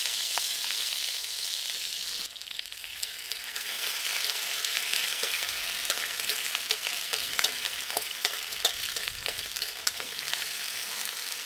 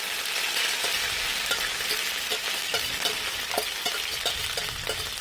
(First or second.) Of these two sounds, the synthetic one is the first